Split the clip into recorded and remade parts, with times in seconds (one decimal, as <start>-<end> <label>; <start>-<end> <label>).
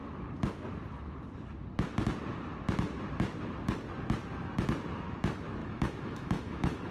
0.0-5.6 recorded; 5.6-6.9 remade